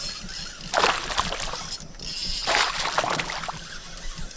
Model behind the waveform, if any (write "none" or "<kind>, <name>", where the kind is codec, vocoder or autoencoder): none